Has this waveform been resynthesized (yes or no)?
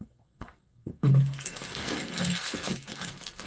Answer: yes